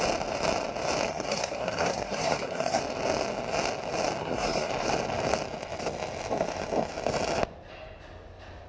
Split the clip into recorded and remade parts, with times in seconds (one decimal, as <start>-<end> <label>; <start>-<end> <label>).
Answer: 0.0-1.1 recorded; 1.1-2.8 remade; 2.8-4.2 recorded; 4.2-4.7 remade; 4.7-8.7 recorded

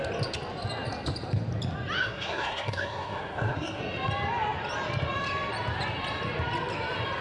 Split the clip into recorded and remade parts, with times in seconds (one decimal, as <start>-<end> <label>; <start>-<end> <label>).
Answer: 0.0-2.0 recorded; 2.0-3.8 remade; 3.8-7.2 recorded

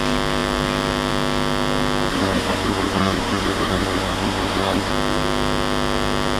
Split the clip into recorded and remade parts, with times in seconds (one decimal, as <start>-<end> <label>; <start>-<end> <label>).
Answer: 0.0-2.1 recorded; 2.1-4.9 remade; 4.9-6.4 recorded

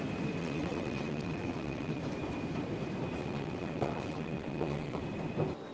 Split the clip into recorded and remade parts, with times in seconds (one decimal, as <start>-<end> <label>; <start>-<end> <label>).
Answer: 0.0-0.4 recorded; 0.4-2.0 remade; 2.0-3.2 recorded; 3.2-5.0 remade; 5.0-5.7 recorded

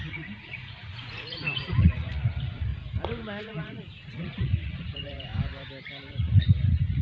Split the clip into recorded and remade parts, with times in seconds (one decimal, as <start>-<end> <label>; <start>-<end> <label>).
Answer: 0.0-2.7 remade; 2.7-3.4 recorded; 3.4-5.3 remade; 5.3-6.1 recorded; 6.1-7.0 remade